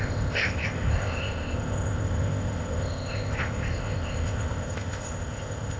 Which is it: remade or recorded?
remade